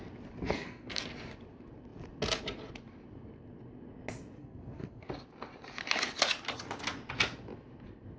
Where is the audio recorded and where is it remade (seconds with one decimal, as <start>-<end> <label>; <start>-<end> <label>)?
0.0-0.5 recorded; 0.5-1.0 remade; 1.0-4.4 recorded; 4.4-5.1 remade; 5.1-8.2 recorded